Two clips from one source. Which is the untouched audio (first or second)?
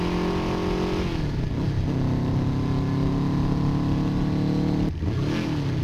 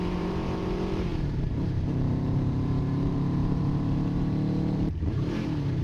first